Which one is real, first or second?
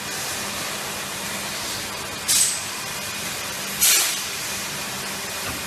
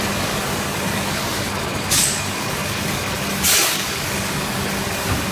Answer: first